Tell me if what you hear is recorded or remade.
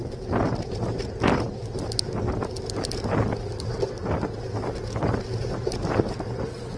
recorded